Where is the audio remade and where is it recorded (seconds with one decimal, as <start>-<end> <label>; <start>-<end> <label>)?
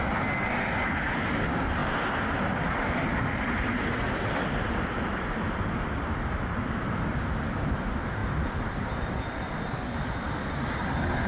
0.0-8.2 recorded; 8.2-9.5 remade; 9.5-11.3 recorded